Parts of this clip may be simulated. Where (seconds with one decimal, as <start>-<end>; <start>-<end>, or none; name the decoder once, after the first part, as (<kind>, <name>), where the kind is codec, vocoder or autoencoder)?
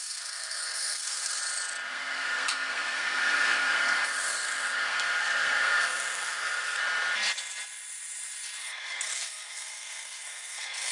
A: 0.0-1.4 (codec, SNAC); 1.9-6.8; 8.6-10.9